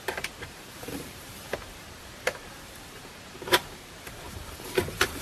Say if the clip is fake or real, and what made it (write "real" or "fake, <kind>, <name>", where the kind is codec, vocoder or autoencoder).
fake, vocoder, BigVGAN v2